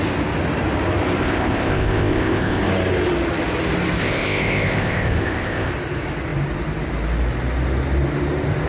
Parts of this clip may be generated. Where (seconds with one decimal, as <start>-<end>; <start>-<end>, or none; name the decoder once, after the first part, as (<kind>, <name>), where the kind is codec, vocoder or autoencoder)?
1.2-2.6 (codec, ZipCodec); 4.0-5.7